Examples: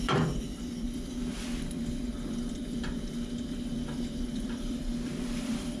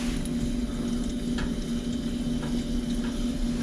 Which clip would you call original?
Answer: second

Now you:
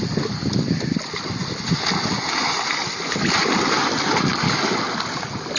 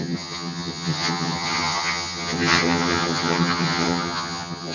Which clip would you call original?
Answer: first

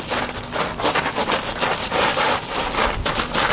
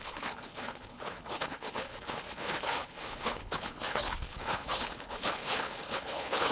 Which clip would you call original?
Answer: first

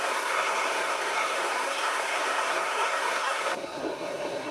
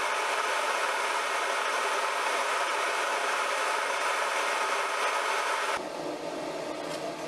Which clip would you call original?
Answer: second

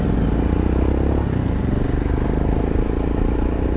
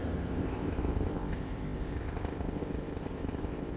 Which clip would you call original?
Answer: first